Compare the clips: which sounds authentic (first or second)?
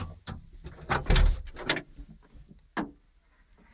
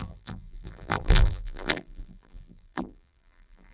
first